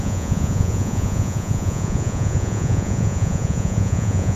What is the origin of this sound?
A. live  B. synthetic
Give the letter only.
B